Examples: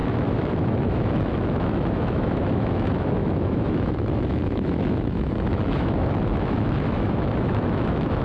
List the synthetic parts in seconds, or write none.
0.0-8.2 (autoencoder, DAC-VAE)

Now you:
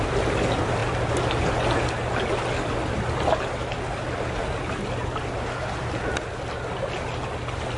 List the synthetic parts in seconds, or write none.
none

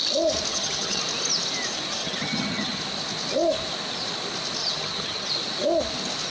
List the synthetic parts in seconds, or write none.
0.5-1.0 (vocoder, HiFi-GAN); 2.0-2.8; 4.6-5.3